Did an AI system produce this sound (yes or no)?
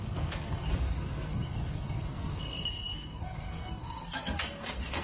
yes